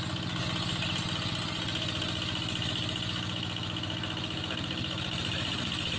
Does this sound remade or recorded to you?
recorded